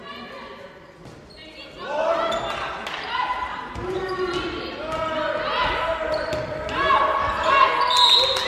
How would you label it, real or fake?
real